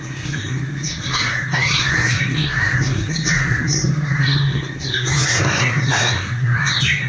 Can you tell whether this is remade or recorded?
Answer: remade